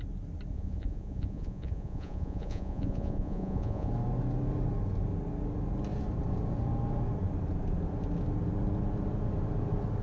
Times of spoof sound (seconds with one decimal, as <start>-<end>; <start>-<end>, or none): 0.5-3.9